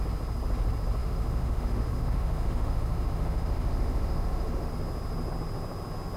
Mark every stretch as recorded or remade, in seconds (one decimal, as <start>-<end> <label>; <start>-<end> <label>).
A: 0.0-1.0 recorded; 1.0-4.7 remade; 4.7-6.2 recorded